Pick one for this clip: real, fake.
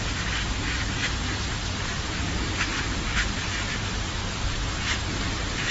fake